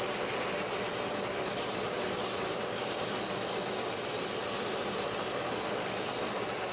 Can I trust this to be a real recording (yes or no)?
yes